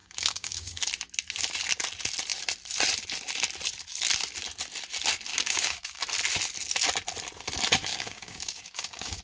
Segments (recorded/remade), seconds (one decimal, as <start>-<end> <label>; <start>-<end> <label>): 0.0-0.8 remade; 0.8-5.3 recorded; 5.3-6.0 remade; 6.0-7.9 recorded; 7.9-9.2 remade